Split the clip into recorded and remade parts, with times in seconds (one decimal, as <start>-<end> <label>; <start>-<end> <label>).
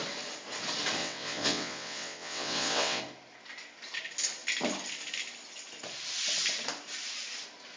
0.0-1.0 recorded; 1.0-3.0 remade; 3.0-7.8 recorded